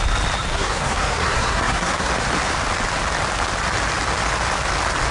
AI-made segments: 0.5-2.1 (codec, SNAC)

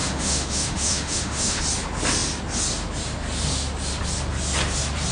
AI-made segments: 0.0-1.6 (autoencoder, DAC-VAE)

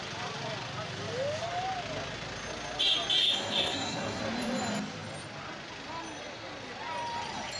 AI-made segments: 3.2-4.2 (codec, SNAC)

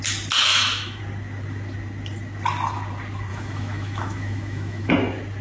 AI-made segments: 0.5-1.0 (autoencoder, DAC-VAE); 3.3-4.9

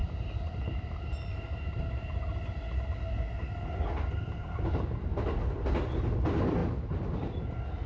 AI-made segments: 0.0-1.8 (vocoder, BigVGAN v2); 6.6-7.4

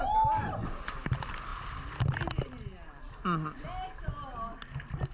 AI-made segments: none

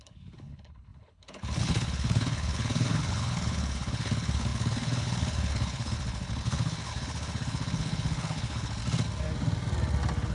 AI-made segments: 0.0-8.8 (codec, HILCodec)

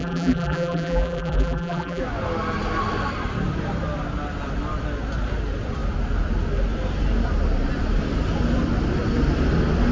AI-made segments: 0.0-2.0 (vocoder, BigVGAN v2)